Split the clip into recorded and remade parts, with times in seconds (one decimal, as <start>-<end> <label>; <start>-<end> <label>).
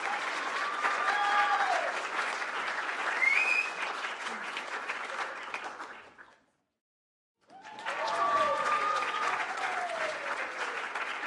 0.0-11.3 remade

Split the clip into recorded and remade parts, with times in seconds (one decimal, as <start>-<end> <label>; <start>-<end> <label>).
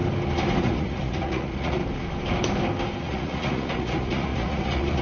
0.0-0.6 recorded; 0.6-1.8 remade; 1.8-3.0 recorded; 3.0-5.0 remade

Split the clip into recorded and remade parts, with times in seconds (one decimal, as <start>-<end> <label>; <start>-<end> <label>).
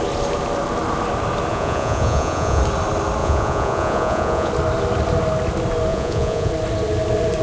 0.0-1.5 recorded; 1.5-2.6 remade; 2.6-3.2 recorded; 3.2-4.5 remade; 4.5-5.9 recorded; 5.9-6.5 remade; 6.5-7.4 recorded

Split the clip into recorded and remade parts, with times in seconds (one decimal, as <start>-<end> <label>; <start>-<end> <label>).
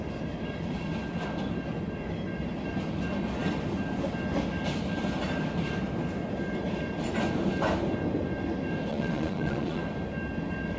0.0-8.9 recorded; 8.9-9.8 remade; 9.8-10.8 recorded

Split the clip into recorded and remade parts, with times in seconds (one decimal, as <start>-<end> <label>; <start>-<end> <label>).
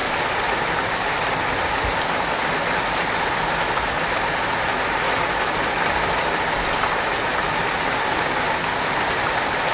0.0-3.1 remade; 3.1-9.7 recorded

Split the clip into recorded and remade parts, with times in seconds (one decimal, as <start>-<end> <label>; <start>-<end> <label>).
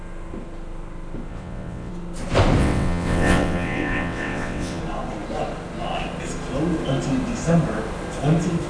0.0-1.3 recorded; 1.3-1.9 remade; 1.9-2.6 recorded; 2.6-4.8 remade; 4.8-8.7 recorded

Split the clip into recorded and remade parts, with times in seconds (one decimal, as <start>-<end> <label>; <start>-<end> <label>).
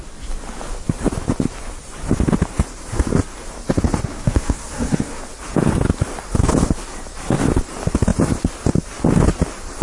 0.0-4.1 recorded; 4.1-5.2 remade; 5.2-9.8 recorded